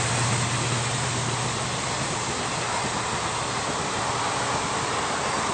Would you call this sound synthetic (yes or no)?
no